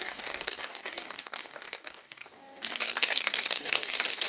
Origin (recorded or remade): remade